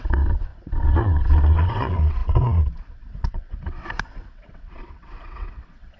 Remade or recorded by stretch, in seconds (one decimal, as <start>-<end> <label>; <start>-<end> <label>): 0.0-6.0 remade